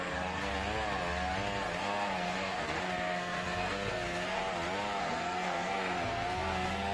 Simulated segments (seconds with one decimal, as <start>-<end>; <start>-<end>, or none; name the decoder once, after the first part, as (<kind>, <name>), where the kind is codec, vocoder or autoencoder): 0.0-0.5 (codec, SNAC); 1.8-4.4; 5.0-6.9